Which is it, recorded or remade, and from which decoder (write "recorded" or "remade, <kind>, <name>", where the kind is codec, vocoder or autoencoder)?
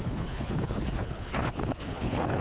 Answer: remade, codec, HILCodec